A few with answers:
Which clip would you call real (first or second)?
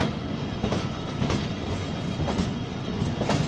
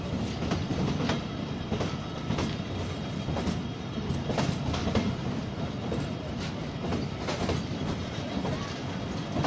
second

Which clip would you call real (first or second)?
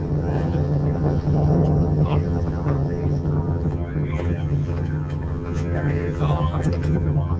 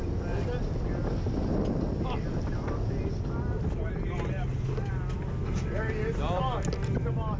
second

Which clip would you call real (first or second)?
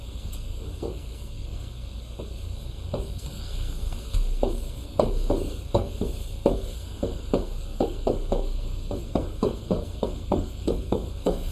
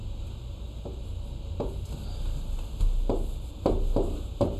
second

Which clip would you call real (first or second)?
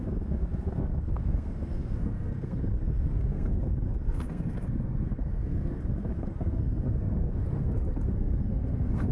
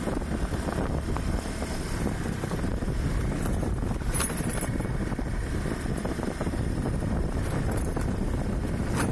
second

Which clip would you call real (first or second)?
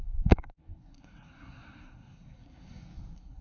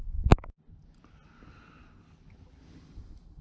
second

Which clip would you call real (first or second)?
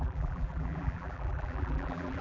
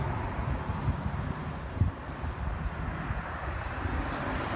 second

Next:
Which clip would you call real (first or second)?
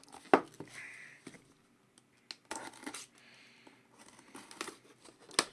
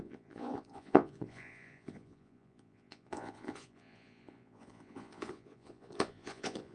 first